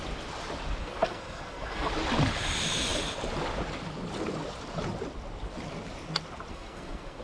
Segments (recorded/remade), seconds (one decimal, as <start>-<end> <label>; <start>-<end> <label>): 0.0-0.8 recorded; 0.8-1.9 remade; 1.9-6.5 recorded; 6.5-7.2 remade